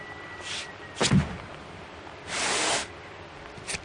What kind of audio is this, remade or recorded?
recorded